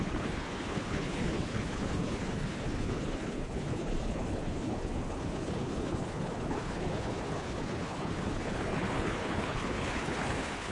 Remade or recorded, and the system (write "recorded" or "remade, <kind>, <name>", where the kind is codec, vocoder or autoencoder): remade, codec, HILCodec